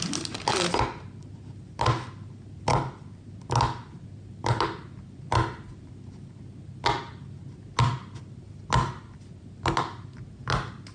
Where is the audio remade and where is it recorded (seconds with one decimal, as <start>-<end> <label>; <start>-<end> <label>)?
0.0-10.9 recorded